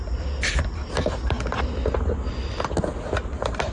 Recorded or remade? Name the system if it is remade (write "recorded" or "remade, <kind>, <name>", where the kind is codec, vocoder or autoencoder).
recorded